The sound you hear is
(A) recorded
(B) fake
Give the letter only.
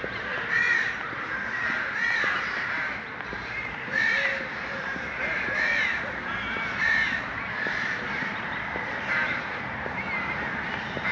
B